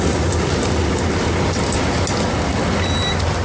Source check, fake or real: real